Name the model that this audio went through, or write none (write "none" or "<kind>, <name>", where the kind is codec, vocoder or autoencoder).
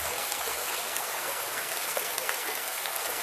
codec, SNAC